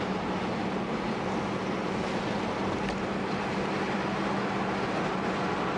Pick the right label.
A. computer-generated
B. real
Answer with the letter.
B